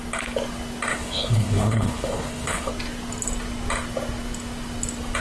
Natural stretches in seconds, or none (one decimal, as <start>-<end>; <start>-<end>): 0.0-0.9; 2.7-5.2